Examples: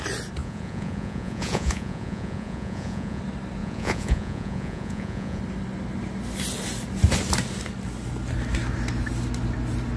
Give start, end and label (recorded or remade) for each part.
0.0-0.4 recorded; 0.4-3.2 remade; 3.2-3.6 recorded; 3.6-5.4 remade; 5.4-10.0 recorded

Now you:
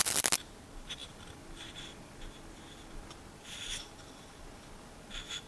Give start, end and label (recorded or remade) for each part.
0.0-5.5 recorded

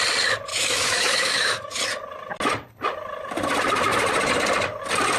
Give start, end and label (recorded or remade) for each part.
0.0-0.5 recorded; 0.5-1.8 remade; 1.8-5.2 recorded

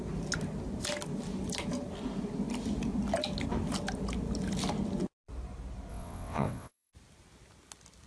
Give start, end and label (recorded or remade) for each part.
0.0-5.9 recorded; 5.9-6.9 remade; 6.9-8.1 recorded

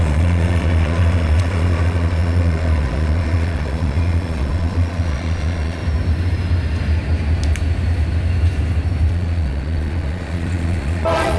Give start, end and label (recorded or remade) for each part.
0.0-5.8 remade; 5.8-9.1 recorded; 9.1-11.4 remade

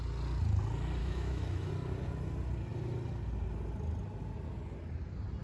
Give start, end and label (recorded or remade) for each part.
0.0-1.0 recorded; 1.0-1.7 remade; 1.7-5.4 recorded

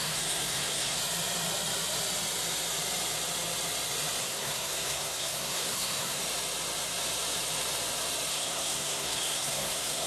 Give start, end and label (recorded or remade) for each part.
0.0-1.0 remade; 1.0-4.2 recorded; 4.2-6.2 remade; 6.2-8.3 recorded; 8.3-10.1 remade

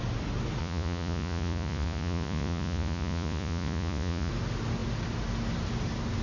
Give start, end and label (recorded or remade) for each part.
0.0-0.6 recorded; 0.6-4.3 remade; 4.3-6.2 recorded